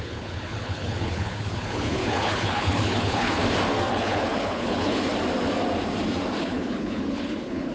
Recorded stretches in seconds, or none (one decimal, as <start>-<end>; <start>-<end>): 3.4-3.9; 5.1-6.4